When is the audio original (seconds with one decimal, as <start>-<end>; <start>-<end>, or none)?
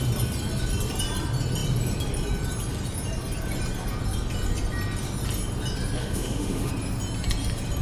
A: 0.0-6.0; 6.7-7.8